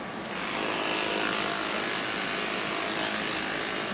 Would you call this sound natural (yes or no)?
yes